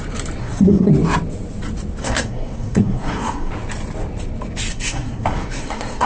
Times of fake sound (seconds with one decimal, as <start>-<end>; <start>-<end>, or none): 0.4-0.9; 2.0-3.5; 4.7-6.1